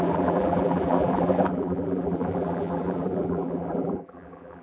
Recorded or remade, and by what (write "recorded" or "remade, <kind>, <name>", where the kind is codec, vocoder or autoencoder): remade, vocoder, BigVGAN v2